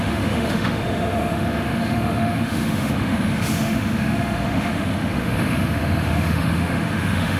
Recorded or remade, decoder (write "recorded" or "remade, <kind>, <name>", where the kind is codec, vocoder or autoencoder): remade, autoencoder, DAC-VAE